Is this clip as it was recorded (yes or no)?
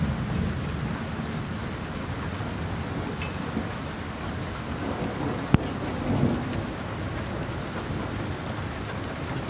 yes